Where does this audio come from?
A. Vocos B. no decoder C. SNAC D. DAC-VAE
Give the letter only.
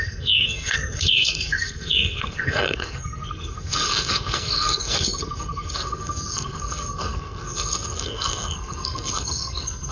C